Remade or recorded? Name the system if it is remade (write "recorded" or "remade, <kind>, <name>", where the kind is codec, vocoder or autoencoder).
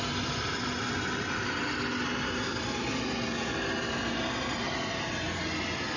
recorded